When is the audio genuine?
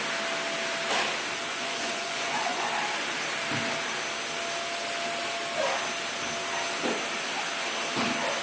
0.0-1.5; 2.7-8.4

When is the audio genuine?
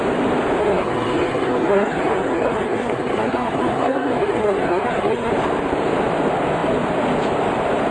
0.0-0.6; 5.3-7.9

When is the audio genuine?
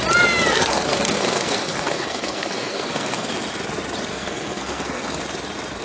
0.0-0.5; 3.3-4.1; 5.2-5.8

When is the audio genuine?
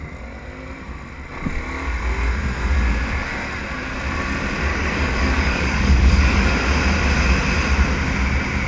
0.0-4.7; 6.5-8.7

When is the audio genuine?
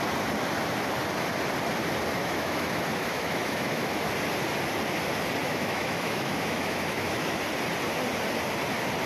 0.0-2.2; 4.0-5.4; 7.4-9.1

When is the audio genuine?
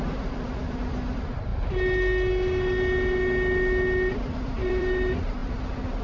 1.5-4.1; 5.4-6.0